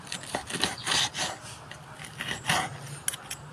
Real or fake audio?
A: real